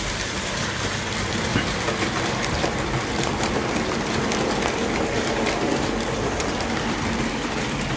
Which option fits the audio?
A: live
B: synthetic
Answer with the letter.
B